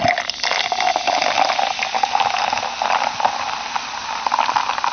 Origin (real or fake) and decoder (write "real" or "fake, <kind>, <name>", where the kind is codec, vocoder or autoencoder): real